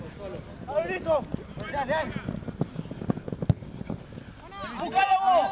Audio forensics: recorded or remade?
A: recorded